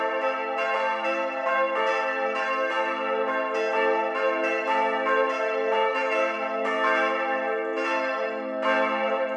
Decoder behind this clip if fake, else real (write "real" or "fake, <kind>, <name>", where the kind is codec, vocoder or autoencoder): real